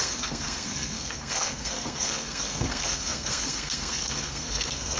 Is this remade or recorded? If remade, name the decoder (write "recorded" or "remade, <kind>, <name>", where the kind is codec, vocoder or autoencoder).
remade, codec, SNAC